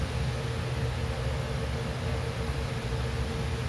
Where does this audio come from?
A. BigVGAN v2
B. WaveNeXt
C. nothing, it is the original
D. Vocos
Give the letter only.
C